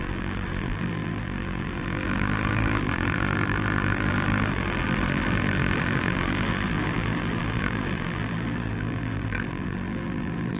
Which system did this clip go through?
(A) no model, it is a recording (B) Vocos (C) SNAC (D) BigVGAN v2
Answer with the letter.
D